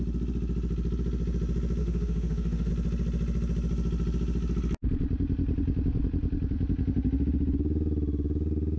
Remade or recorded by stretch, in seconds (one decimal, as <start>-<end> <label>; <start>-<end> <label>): 0.0-1.8 recorded; 1.8-2.7 remade; 2.7-8.8 recorded